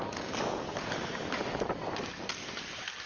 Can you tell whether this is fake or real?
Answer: real